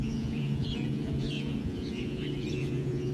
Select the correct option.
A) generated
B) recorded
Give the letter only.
A